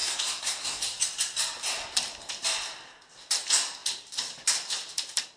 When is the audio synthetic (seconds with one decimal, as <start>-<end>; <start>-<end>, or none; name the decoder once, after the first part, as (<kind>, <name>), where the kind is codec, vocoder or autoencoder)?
0.0-0.8 (codec, SNAC)